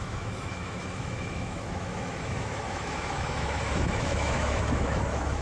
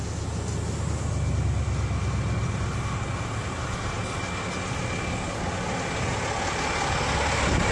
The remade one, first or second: first